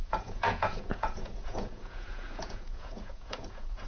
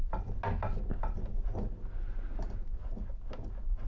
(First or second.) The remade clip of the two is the first